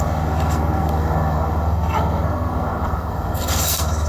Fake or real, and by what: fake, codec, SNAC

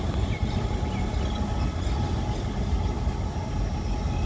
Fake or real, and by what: real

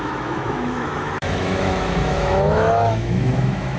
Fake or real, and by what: fake, autoencoder, DAC-VAE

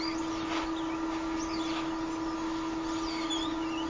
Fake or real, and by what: real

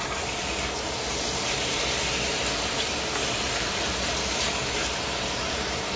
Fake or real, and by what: fake, vocoder, BigVGAN v2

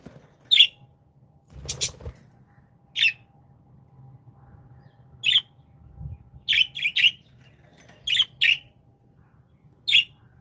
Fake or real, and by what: real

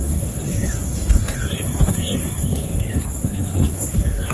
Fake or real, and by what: fake, codec, SNAC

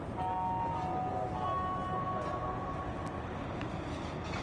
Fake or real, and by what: real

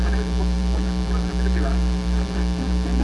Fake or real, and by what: fake, vocoder, BigVGAN v2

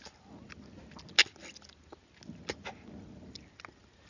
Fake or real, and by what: real